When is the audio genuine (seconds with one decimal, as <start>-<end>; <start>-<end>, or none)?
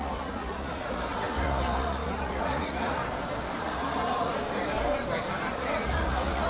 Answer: 3.0-3.6; 4.3-5.5